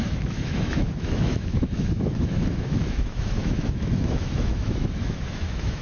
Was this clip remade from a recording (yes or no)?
yes